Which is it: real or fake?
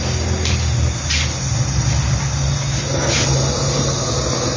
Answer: real